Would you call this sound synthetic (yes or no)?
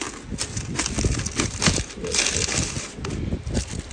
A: no